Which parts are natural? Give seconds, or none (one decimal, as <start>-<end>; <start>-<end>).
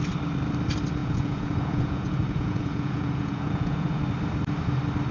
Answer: 0.0-1.0; 4.0-5.1